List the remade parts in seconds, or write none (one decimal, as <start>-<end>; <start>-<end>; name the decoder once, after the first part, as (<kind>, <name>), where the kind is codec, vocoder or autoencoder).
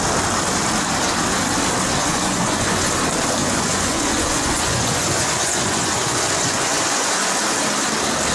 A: 2.0-2.9 (vocoder, Vocos); 3.4-7.3